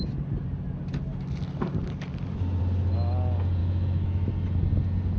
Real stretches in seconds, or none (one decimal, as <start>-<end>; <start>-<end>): 0.0-3.6; 4.3-5.2